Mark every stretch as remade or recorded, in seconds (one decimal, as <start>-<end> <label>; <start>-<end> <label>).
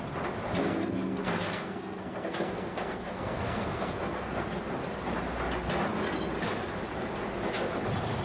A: 0.0-0.6 recorded; 0.6-4.6 remade; 4.6-8.2 recorded